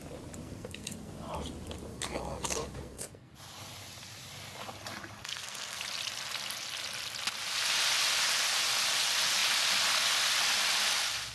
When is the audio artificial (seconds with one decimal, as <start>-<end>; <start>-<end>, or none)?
0.4-1.1; 1.9-3.3; 5.2-5.8